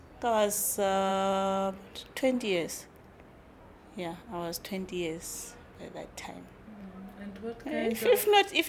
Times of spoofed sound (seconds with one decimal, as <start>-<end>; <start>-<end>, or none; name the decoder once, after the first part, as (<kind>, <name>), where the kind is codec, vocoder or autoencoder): 1.1-3.0 (vocoder, BigVGAN v2)